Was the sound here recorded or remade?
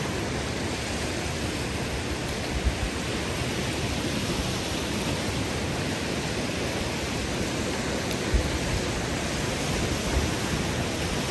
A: recorded